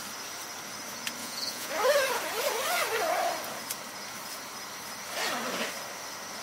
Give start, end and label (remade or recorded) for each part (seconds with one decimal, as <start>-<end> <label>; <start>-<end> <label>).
0.0-1.2 recorded; 1.2-1.7 remade; 1.7-6.4 recorded